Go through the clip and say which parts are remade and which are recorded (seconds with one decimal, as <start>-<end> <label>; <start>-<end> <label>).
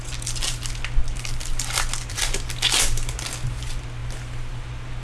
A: 0.0-5.0 recorded